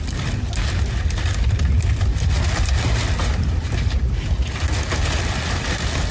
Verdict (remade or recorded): recorded